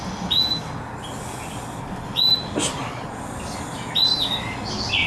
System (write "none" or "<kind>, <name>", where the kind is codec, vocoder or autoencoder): none